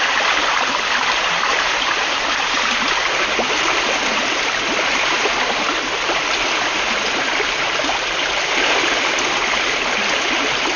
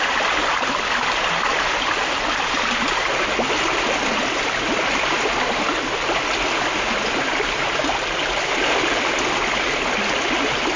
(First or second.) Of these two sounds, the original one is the second